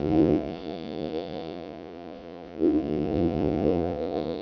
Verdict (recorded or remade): remade